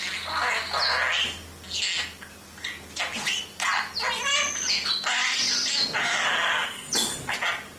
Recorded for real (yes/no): yes